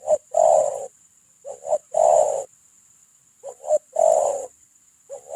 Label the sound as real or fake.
real